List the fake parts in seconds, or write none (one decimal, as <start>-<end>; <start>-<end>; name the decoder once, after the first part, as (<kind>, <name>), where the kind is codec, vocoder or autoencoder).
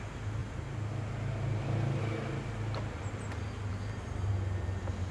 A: 3.7-4.3 (vocoder, BigVGAN v2)